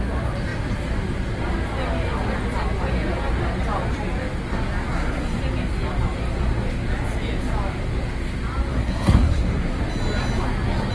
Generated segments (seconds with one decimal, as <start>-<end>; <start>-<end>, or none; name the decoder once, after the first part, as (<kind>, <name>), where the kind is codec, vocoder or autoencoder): 4.9-5.4 (codec, SNAC); 8.7-9.8